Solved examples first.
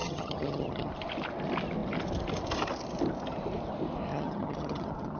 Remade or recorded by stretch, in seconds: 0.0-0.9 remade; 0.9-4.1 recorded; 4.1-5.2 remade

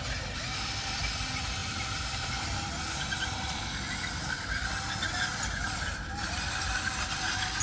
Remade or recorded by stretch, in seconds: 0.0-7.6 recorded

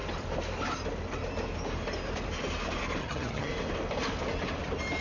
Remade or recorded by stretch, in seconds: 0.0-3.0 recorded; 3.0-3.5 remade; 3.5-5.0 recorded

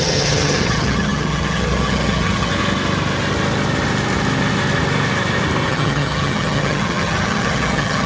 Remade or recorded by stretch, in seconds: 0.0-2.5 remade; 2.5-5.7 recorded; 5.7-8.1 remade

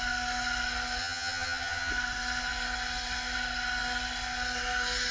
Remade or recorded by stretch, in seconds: 0.0-1.0 recorded; 1.0-1.9 remade; 1.9-5.1 recorded

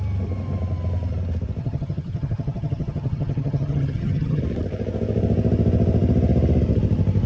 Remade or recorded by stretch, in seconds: 0.0-1.6 recorded; 1.6-4.4 remade; 4.4-7.3 recorded